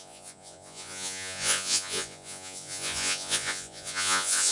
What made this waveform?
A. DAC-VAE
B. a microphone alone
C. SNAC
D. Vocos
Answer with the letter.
D